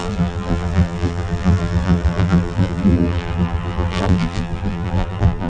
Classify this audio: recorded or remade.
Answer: remade